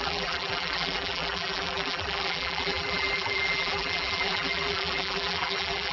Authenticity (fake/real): fake